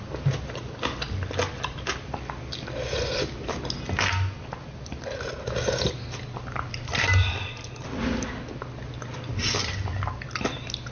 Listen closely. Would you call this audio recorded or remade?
recorded